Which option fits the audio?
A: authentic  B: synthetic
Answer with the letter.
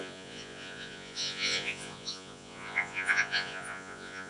B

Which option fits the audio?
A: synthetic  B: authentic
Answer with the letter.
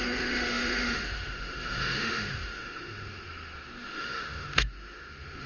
A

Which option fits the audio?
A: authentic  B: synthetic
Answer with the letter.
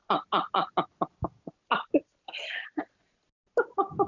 A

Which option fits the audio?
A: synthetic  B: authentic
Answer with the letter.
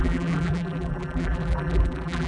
A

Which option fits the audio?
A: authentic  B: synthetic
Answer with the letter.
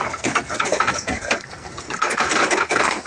B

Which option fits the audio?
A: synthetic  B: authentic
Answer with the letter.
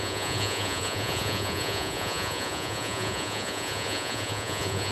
A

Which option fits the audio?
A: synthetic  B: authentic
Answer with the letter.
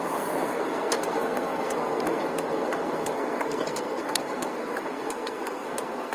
A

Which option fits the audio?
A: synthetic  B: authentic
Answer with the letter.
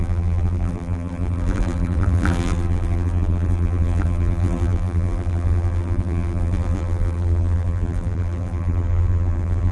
A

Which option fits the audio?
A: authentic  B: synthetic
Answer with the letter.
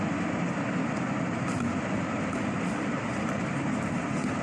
A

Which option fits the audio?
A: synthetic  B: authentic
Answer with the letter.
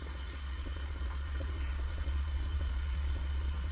A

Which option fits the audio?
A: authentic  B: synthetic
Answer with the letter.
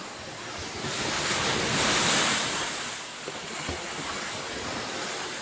A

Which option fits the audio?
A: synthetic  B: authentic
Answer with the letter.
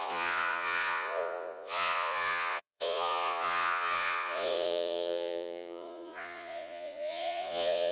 A